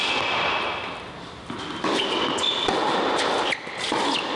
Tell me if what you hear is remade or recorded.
recorded